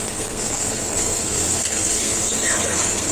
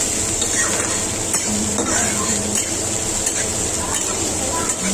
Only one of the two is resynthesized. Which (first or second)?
first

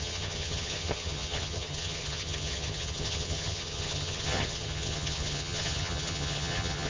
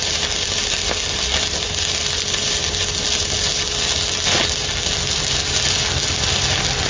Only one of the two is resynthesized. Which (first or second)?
first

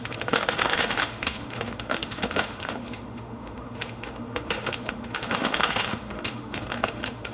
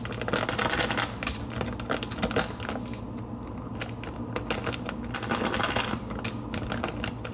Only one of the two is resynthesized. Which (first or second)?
first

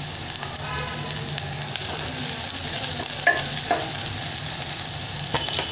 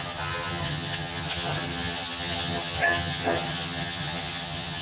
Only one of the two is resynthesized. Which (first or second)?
second